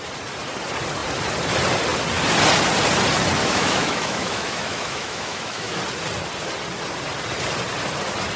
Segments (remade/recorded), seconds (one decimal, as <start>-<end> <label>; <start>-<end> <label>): 0.0-3.4 recorded; 3.4-5.8 remade; 5.8-8.4 recorded